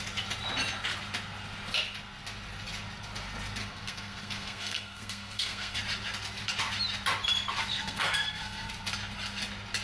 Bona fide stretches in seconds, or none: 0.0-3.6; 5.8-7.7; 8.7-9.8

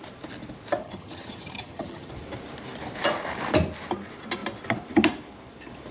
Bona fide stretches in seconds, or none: 0.0-0.8; 2.1-5.9

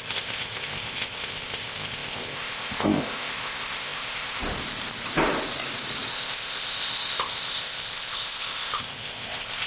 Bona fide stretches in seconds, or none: 4.4-6.1

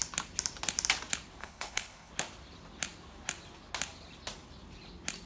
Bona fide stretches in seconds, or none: 0.0-1.4; 2.1-5.3

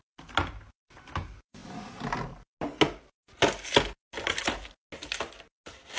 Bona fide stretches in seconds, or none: 0.0-6.0

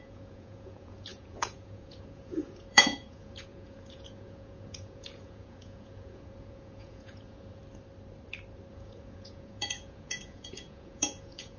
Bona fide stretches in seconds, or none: 7.6-8.7

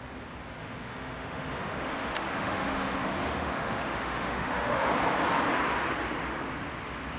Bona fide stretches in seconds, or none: 0.0-0.6; 4.9-7.2

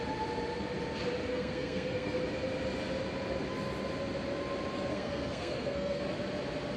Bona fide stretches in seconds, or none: 0.0-1.3; 2.2-4.9; 6.0-6.8